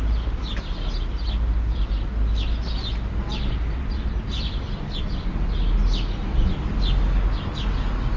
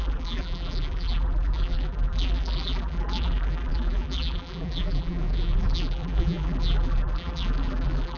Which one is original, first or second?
first